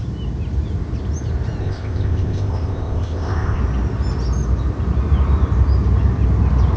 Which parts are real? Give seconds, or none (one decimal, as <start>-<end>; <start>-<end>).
0.0-1.6; 3.6-6.8